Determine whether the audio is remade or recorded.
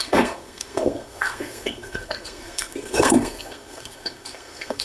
remade